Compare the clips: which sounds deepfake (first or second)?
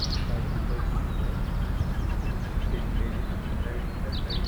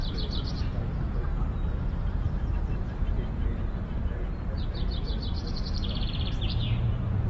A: second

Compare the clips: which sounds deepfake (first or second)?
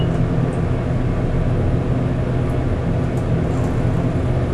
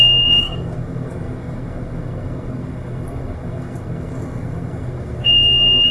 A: second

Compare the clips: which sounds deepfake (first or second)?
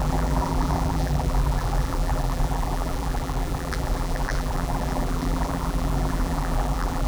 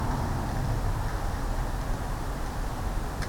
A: first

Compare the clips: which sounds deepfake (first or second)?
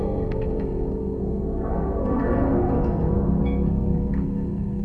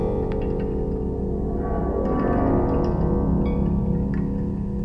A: first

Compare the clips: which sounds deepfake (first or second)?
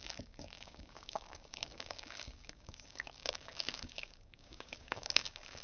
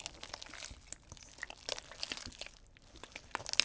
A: first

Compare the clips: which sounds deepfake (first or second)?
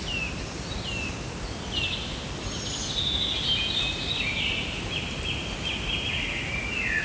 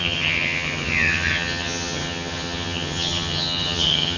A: second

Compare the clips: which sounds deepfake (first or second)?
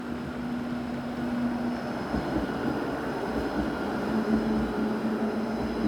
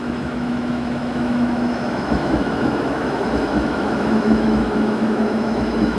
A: second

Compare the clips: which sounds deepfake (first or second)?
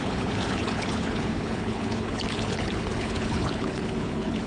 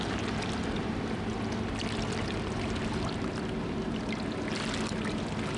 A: first